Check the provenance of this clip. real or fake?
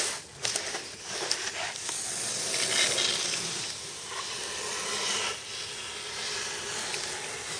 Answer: real